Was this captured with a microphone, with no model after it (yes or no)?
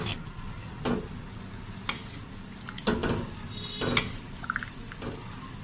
yes